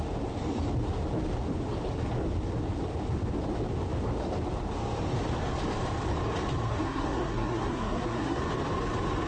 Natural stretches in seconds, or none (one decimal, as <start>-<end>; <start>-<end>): 0.0-6.7; 8.4-9.3